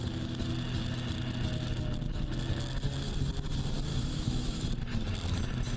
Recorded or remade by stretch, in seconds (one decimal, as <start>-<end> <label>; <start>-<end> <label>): 0.0-3.9 recorded; 3.9-4.7 remade; 4.7-5.8 recorded